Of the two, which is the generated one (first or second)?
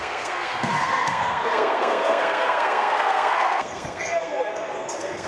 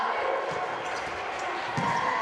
first